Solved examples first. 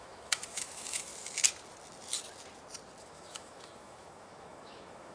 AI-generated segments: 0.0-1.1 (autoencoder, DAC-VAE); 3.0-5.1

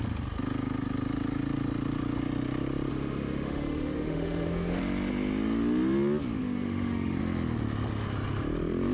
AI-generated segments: 2.9-4.8 (autoencoder, DAC-VAE); 6.4-7.2

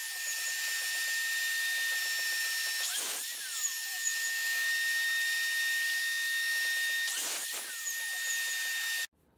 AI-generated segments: 3.9-4.7 (autoencoder, DAC-VAE); 6.0-6.6

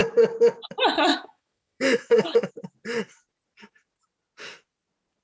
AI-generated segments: 1.1-2.5 (autoencoder, DAC-VAE)

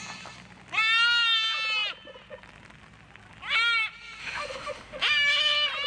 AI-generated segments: 4.2-5.1 (autoencoder, DAC-VAE)